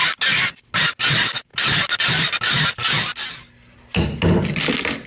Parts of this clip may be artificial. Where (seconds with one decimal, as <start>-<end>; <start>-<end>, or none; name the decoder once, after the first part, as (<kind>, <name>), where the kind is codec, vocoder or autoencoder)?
none